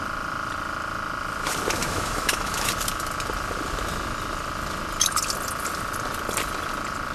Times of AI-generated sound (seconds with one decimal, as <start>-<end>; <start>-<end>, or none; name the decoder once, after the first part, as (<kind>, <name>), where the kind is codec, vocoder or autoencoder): 1.8-2.7 (autoencoder, DAC-VAE)